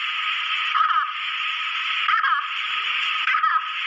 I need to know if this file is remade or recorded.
recorded